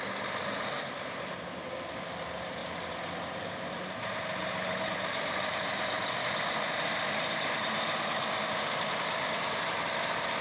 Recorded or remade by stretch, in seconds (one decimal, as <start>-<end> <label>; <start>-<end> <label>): 0.0-2.6 remade; 2.6-4.9 recorded; 4.9-10.4 remade